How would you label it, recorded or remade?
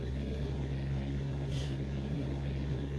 remade